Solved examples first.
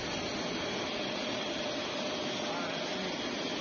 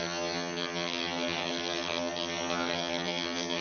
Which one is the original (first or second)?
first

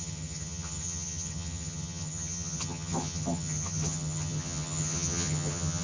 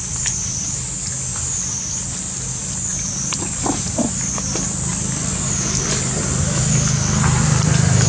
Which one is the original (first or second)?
second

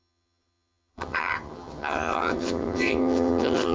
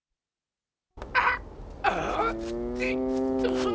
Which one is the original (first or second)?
second